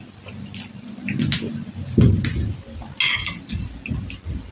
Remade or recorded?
recorded